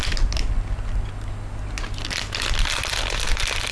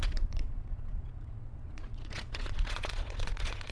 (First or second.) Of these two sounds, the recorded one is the first